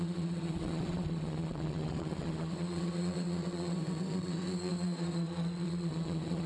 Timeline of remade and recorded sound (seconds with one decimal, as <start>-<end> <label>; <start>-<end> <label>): 0.0-6.5 remade